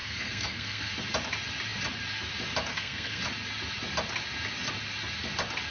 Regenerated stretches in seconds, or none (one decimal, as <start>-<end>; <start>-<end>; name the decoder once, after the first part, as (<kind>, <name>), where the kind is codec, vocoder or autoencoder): 0.0-0.9 (codec, SNAC); 2.7-3.2